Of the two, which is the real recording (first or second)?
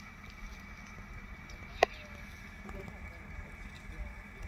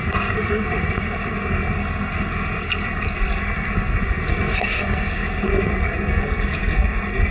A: first